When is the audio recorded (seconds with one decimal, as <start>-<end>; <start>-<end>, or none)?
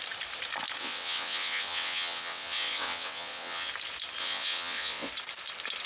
0.0-0.8; 3.7-4.2; 5.1-5.9